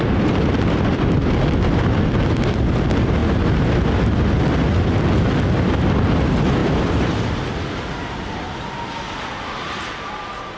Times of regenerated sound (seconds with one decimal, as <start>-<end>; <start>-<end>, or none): none